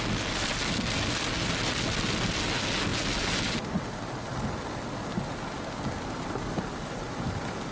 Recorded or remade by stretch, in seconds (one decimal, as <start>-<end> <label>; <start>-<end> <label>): 0.0-7.7 recorded